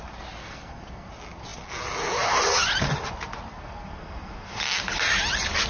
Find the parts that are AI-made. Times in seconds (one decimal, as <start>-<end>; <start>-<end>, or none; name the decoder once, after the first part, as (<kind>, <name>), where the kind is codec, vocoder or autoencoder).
0.4-1.1 (codec, SNAC); 3.5-4.5